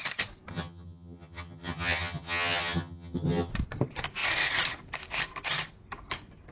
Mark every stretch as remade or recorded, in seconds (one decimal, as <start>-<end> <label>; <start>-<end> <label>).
0.0-0.5 recorded; 0.5-3.5 remade; 3.5-6.5 recorded